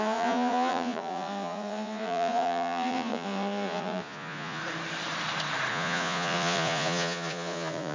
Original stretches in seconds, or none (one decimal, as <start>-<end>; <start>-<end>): 4.6-5.7